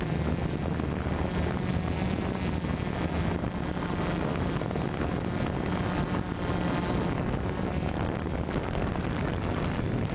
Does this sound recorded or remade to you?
recorded